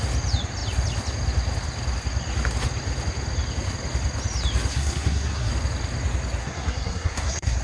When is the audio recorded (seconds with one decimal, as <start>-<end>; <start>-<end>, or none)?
0.0-4.7; 5.5-6.4